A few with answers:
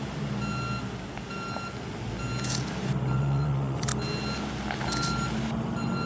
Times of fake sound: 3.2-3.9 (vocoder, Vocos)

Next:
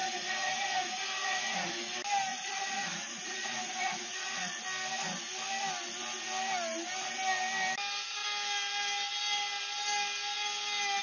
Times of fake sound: 0.0-1.7 (vocoder, Vocos); 2.3-4.6

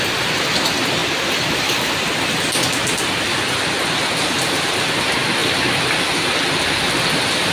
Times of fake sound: none

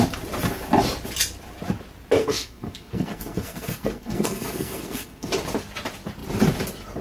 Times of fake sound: 2.2-5.3 (codec, SNAC)

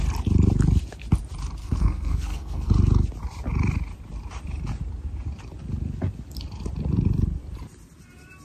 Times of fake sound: 1.6-2.7 (codec, SNAC)

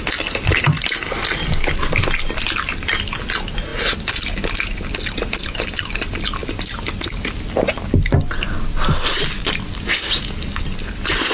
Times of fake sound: none

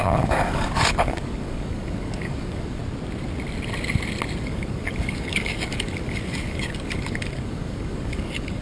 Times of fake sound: 0.0-2.8 (codec, DAC); 4.4-8.6

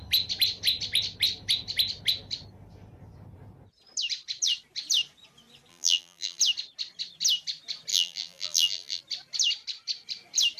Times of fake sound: 5.7-6.4 (vocoder, BigVGAN v2); 7.9-9.0